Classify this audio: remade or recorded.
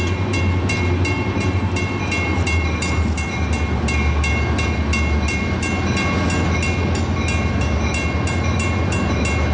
recorded